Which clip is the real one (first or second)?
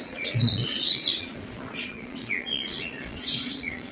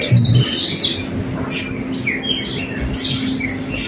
second